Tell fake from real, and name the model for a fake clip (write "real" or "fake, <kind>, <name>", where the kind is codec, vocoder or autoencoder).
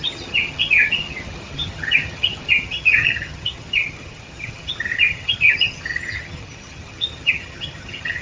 fake, vocoder, HiFi-GAN